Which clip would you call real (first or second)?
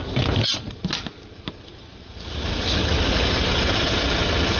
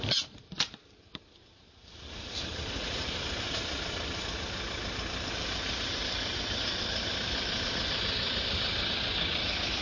first